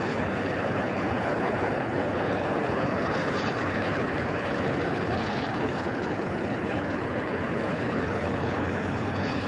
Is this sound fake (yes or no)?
yes